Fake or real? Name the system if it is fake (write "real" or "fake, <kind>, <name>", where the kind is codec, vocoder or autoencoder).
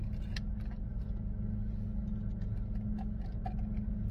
real